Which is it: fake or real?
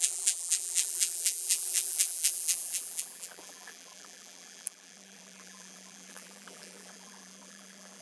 fake